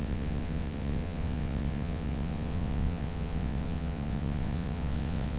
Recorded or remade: remade